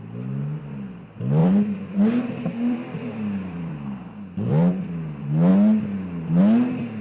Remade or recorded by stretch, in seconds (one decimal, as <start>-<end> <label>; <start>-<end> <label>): 0.0-1.4 recorded; 1.4-4.8 remade; 4.8-7.0 recorded